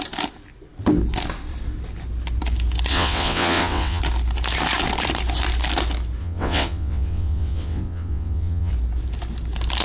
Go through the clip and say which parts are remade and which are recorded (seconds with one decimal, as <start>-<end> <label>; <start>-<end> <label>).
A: 0.0-2.9 recorded; 2.9-4.0 remade; 4.0-6.2 recorded; 6.2-8.7 remade; 8.7-9.8 recorded